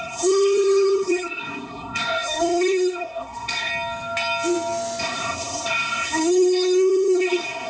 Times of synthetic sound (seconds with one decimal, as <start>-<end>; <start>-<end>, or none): 0.0-3.7; 5.0-7.7